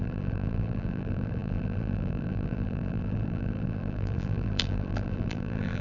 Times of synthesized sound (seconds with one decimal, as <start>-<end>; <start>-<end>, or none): 0.0-5.8